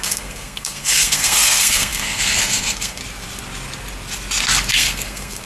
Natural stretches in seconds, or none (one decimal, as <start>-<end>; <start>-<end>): 3.0-4.7